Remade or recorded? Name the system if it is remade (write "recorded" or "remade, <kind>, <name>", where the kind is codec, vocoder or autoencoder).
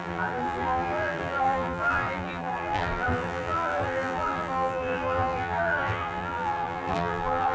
remade, vocoder, BigVGAN v2